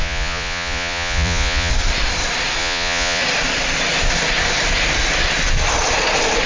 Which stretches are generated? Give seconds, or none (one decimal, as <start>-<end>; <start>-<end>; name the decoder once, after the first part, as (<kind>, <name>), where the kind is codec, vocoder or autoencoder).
0.0-1.7 (vocoder, Vocos); 2.6-3.2